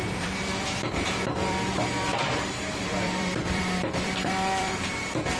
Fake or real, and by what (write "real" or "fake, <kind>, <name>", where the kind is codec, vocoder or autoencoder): fake, vocoder, BigVGAN v2